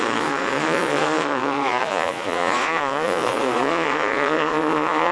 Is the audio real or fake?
fake